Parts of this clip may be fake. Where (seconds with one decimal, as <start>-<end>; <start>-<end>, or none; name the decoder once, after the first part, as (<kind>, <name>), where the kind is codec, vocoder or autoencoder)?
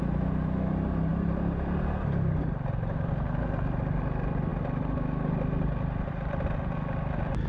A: none